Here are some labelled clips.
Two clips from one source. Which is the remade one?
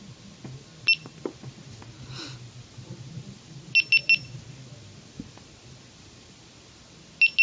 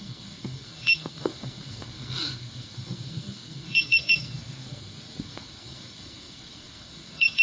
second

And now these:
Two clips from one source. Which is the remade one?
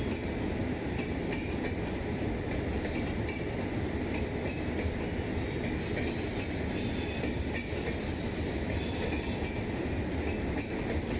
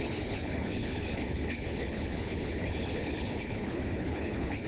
second